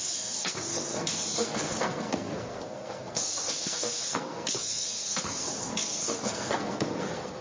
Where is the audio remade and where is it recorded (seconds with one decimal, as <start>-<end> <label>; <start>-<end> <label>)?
0.0-7.4 remade